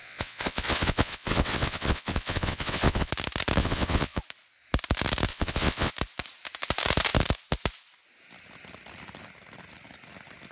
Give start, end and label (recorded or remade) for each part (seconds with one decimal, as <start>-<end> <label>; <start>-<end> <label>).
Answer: 0.0-3.1 remade; 3.1-3.6 recorded; 3.6-4.2 remade; 4.2-5.3 recorded; 5.3-5.9 remade; 5.9-10.5 recorded